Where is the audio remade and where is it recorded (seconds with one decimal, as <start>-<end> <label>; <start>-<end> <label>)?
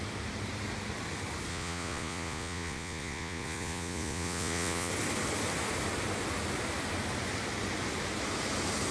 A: 0.0-1.5 recorded; 1.5-4.9 remade; 4.9-8.9 recorded